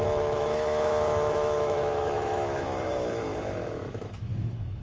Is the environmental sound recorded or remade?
remade